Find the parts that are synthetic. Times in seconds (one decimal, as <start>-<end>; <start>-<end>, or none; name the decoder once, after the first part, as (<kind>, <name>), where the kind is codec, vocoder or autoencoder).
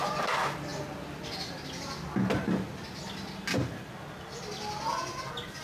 none